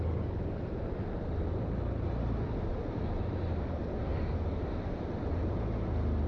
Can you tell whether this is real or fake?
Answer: real